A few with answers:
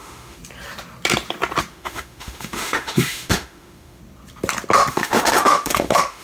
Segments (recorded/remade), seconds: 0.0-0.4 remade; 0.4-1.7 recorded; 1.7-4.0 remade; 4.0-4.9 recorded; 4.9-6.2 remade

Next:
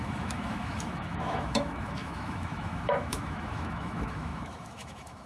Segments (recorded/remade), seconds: 0.0-5.3 remade

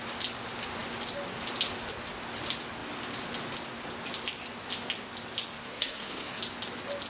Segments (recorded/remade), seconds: 0.0-5.6 recorded; 5.6-6.4 remade; 6.4-7.1 recorded

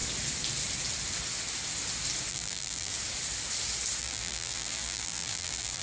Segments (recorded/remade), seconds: 0.0-2.3 recorded; 2.3-2.9 remade; 2.9-4.0 recorded; 4.0-5.8 remade

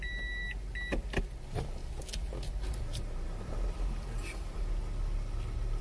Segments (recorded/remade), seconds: 0.0-2.9 recorded; 2.9-4.6 remade; 4.6-5.8 recorded